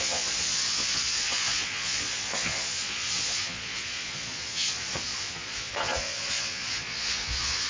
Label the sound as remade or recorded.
remade